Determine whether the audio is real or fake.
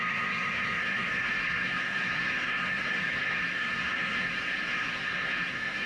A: fake